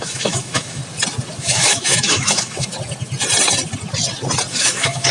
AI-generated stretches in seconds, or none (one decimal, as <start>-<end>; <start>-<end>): 0.0-0.8; 1.4-2.7; 4.5-5.1